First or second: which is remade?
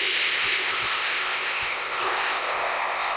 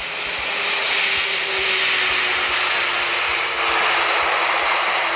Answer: first